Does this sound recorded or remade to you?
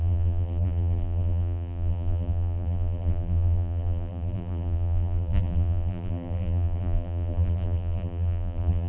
remade